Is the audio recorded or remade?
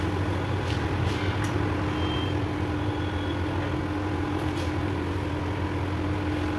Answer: recorded